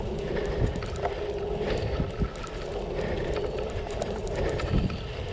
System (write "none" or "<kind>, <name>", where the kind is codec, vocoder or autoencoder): none